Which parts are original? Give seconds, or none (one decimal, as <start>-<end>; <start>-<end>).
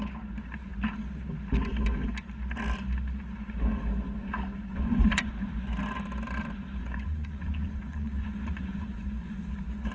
0.0-4.7; 5.3-6.8